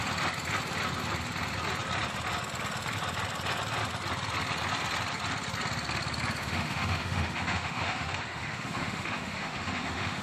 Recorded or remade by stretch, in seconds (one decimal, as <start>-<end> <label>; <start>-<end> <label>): 0.0-6.4 recorded; 6.4-10.2 remade